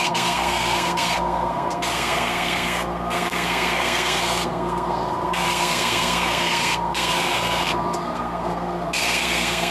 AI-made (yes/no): yes